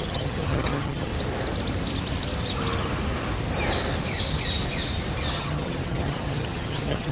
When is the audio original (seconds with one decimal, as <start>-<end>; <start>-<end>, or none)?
1.1-5.3